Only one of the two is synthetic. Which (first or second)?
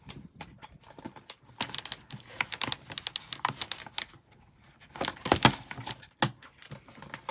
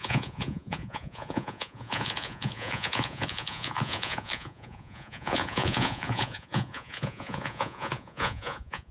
second